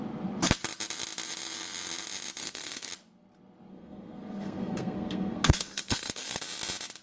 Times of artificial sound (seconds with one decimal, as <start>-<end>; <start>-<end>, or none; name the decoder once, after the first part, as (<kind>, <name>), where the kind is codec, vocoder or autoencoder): 2.4-2.9 (codec, SNAC); 3.7-6.4